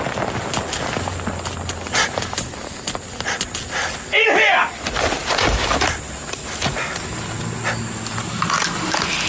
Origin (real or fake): real